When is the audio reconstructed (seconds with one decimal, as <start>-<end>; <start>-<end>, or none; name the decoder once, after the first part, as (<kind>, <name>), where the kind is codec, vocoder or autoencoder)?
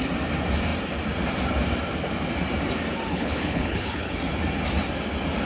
3.1-4.1 (codec, HILCodec)